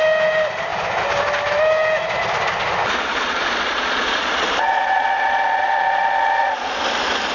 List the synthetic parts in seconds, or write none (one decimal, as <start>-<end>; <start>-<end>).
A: 3.1-6.8